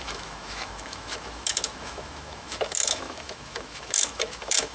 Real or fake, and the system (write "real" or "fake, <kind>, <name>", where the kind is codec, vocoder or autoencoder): fake, autoencoder, DAC-VAE